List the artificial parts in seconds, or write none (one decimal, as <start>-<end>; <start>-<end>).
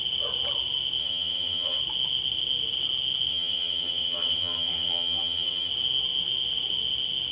1.0-1.8; 3.3-5.7